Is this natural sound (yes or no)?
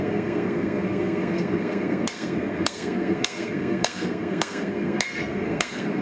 no